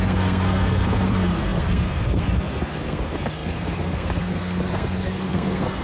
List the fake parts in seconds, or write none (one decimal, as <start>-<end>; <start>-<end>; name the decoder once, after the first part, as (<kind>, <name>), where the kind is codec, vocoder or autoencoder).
0.0-5.8 (codec, SNAC)

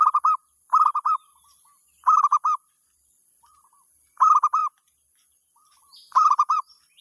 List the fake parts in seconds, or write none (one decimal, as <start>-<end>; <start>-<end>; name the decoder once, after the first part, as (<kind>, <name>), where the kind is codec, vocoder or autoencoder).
0.0-4.6 (vocoder, BigVGAN v2); 5.8-7.0

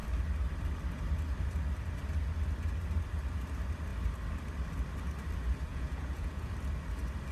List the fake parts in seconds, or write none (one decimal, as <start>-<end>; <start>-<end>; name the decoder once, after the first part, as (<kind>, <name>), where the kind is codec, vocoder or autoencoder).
5.7-6.5 (vocoder, Vocos)

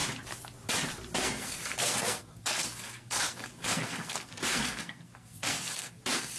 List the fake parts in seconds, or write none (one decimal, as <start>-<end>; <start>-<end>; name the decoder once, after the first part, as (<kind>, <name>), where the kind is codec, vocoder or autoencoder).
1.2-6.4 (codec, SNAC)

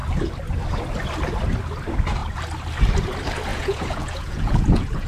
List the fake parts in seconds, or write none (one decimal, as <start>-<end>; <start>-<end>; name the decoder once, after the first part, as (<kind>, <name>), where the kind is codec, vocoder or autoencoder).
3.5-5.1 (vocoder, Vocos)

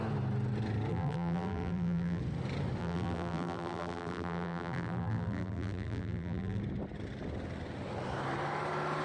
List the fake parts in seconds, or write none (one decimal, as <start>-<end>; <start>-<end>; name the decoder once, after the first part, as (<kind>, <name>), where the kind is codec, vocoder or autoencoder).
0.9-2.2 (vocoder, BigVGAN v2); 2.8-6.6